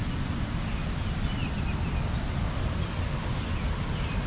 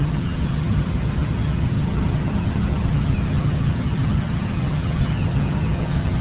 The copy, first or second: second